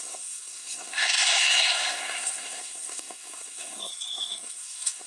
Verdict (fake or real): fake